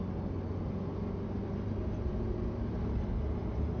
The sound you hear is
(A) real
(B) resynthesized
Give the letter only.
A